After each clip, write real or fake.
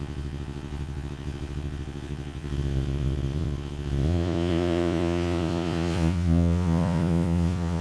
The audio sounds fake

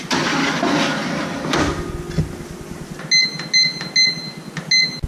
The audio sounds real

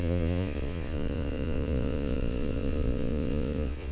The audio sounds fake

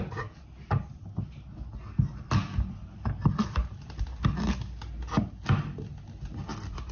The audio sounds real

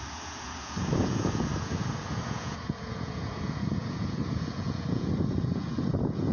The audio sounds fake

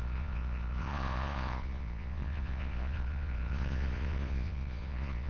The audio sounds fake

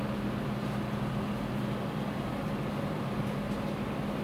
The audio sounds real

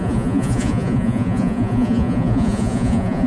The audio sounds fake